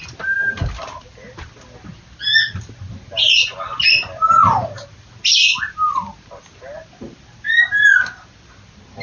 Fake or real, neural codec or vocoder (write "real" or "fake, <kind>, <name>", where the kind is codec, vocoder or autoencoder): real